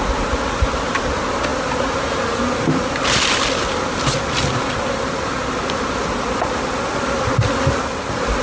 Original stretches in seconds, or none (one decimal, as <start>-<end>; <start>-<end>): 0.0-8.4